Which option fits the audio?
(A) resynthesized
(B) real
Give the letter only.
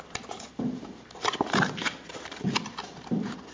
B